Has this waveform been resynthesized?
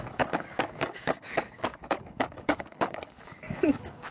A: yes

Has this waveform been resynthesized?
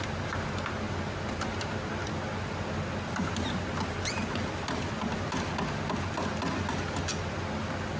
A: no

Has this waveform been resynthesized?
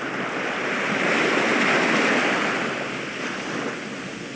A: no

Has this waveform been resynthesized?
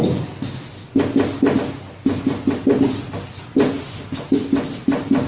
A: no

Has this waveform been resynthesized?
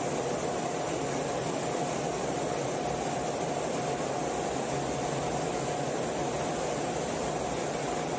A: no